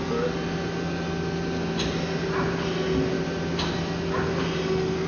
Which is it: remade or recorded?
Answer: recorded